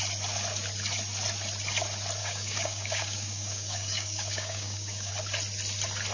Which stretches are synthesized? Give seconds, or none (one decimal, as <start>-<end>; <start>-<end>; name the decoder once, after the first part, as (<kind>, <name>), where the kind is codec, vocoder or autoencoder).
2.2-5.1 (codec, DAC)